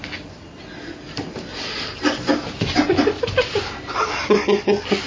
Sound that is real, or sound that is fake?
real